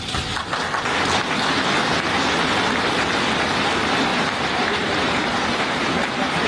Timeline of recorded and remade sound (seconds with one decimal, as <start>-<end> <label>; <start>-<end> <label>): 0.0-4.1 recorded; 4.1-6.5 remade